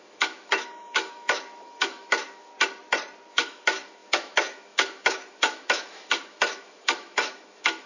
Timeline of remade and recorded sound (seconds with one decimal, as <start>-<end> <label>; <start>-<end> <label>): 0.0-2.5 remade; 2.5-3.3 recorded; 3.3-7.9 remade